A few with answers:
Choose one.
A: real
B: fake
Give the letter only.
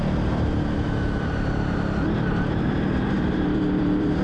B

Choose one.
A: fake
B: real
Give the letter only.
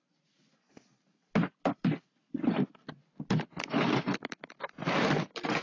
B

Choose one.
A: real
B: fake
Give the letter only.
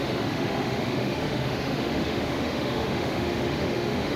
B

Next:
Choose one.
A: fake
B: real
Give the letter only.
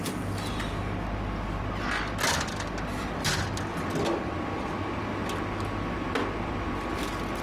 B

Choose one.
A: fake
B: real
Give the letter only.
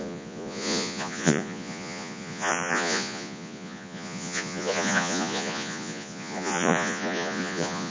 A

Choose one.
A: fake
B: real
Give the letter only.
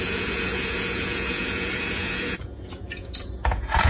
A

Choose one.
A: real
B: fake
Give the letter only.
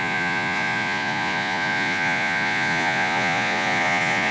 B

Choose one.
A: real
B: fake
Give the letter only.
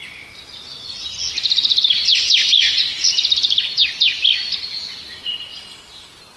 A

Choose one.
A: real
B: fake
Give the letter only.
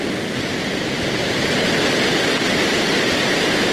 A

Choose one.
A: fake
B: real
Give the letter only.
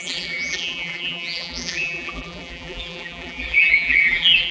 A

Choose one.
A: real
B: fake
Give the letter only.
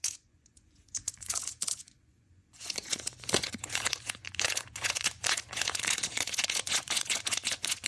B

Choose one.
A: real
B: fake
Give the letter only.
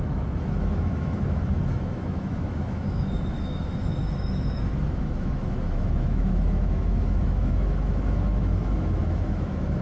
B